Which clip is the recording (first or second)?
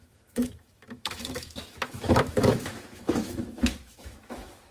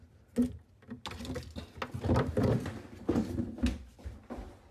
second